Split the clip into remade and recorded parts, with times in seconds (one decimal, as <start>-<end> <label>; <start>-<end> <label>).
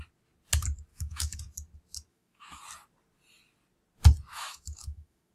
0.0-0.9 recorded; 0.9-1.4 remade; 1.4-2.1 recorded; 2.1-2.6 remade; 2.6-4.3 recorded; 4.3-5.3 remade